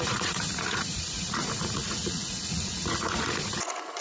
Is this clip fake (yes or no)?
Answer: yes